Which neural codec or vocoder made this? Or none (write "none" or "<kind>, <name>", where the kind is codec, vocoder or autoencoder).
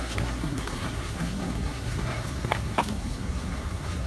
codec, SNAC